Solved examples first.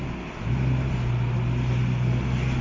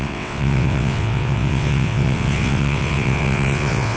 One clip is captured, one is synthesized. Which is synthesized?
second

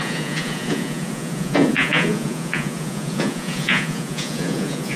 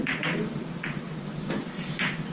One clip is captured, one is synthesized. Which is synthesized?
first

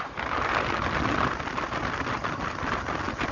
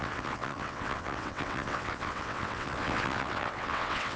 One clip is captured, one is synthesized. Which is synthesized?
second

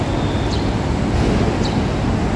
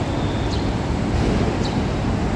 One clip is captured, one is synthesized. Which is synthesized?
second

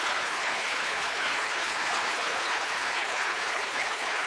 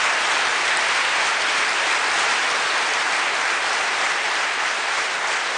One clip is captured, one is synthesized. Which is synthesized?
first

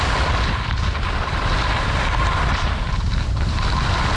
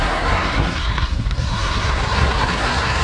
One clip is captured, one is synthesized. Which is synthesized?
second